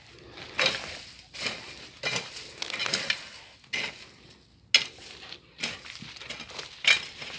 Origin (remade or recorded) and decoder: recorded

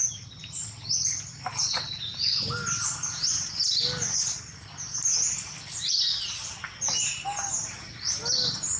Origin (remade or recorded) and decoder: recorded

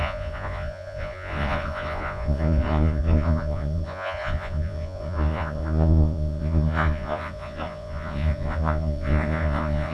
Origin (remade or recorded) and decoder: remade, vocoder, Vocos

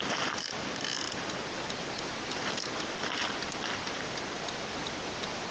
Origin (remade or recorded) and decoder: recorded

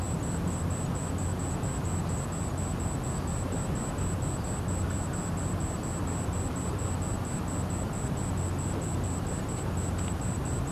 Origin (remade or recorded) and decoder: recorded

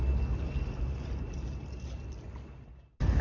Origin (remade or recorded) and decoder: recorded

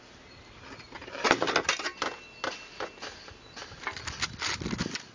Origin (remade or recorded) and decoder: recorded